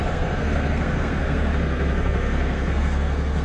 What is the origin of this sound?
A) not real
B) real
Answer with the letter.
A